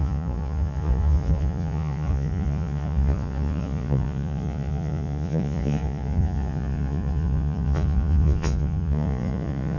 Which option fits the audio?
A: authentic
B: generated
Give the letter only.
B